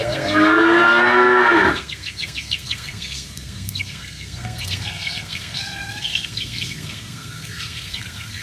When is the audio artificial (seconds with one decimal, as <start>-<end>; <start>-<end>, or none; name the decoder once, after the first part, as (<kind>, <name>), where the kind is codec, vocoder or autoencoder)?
0.0-8.4 (codec, SNAC)